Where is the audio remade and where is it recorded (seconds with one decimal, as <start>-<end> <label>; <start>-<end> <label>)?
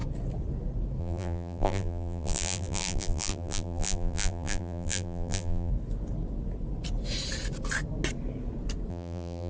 0.0-1.0 recorded; 1.0-5.7 remade; 5.7-8.9 recorded; 8.9-9.5 remade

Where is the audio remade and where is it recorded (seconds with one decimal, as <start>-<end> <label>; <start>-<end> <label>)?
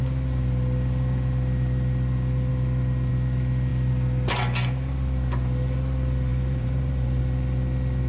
0.0-6.3 recorded; 6.3-7.2 remade; 7.2-8.1 recorded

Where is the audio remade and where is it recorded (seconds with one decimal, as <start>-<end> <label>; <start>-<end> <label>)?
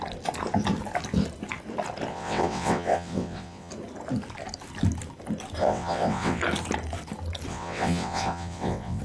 0.0-2.1 recorded; 2.1-3.7 remade; 3.7-5.6 recorded; 5.6-6.4 remade; 6.4-7.5 recorded; 7.5-9.0 remade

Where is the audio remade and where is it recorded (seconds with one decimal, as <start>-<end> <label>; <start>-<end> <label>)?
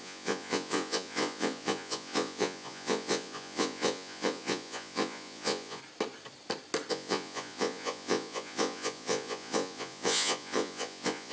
0.0-5.8 remade; 5.8-6.9 recorded; 6.9-11.3 remade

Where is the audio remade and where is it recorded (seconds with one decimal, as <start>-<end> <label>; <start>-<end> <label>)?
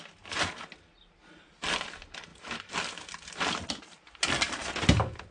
0.0-5.3 recorded